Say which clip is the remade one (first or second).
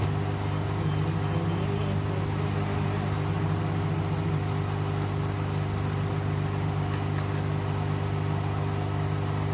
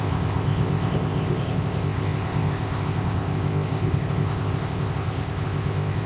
second